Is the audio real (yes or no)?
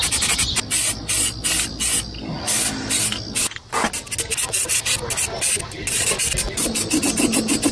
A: yes